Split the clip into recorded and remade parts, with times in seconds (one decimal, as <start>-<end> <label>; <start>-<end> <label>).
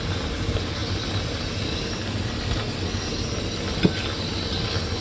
0.0-5.0 recorded